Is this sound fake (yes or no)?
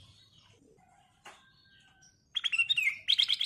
no